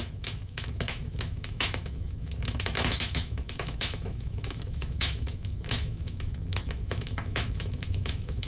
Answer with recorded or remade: remade